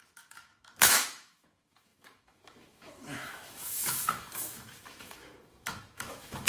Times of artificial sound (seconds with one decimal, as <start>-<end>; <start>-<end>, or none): 0.0-6.5

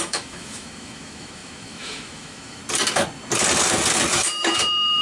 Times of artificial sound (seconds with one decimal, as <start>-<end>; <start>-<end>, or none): 0.0-2.6; 4.1-5.0

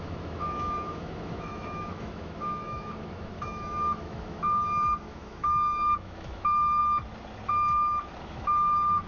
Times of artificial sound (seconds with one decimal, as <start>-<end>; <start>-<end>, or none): 0.0-6.8; 8.2-9.1